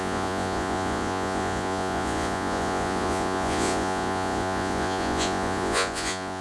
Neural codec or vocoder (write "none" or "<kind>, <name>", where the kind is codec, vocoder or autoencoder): vocoder, Vocos